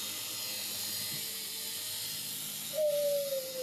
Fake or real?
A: real